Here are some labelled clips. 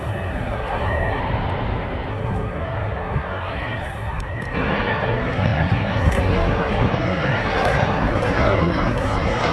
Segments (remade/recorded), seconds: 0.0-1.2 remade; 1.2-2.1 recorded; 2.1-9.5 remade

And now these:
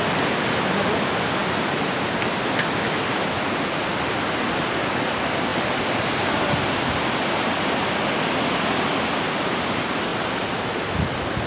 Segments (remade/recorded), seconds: 0.0-11.5 recorded

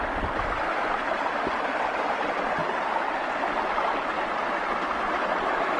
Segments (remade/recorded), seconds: 0.0-5.8 recorded

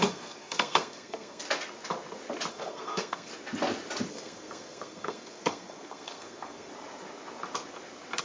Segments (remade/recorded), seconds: 0.0-1.4 remade; 1.4-2.5 recorded; 2.5-3.3 remade; 3.3-4.1 recorded; 4.1-6.7 remade; 6.7-8.2 recorded